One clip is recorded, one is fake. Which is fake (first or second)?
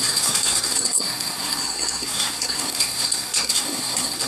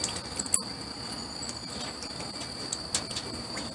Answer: first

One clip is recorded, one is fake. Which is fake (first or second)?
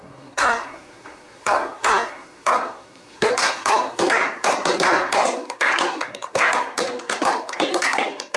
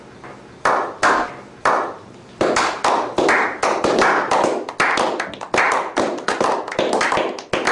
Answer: first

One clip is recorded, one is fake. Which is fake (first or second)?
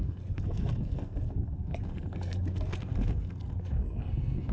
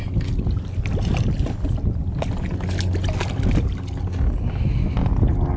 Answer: first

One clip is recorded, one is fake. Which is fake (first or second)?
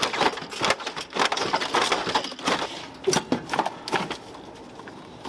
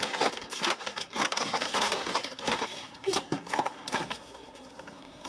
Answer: second